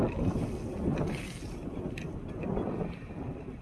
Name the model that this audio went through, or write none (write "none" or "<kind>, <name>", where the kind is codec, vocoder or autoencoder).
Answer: none